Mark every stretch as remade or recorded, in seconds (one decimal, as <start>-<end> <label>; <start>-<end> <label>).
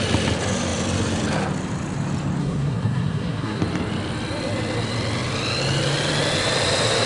0.0-2.4 recorded; 2.4-3.6 remade; 3.6-7.1 recorded